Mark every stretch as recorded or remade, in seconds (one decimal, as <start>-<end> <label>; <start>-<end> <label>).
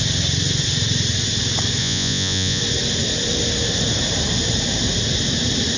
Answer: 0.0-1.8 recorded; 1.8-2.6 remade; 2.6-5.8 recorded